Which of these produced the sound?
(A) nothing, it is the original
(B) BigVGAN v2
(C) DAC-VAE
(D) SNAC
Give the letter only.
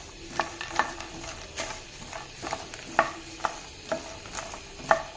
B